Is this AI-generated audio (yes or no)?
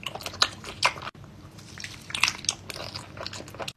no